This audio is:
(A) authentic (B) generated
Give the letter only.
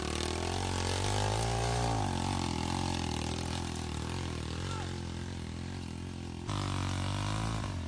A